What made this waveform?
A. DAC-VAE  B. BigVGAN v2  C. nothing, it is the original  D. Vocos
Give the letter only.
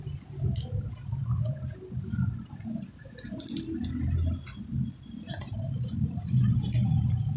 C